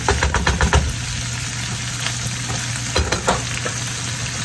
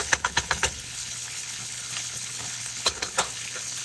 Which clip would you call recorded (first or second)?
first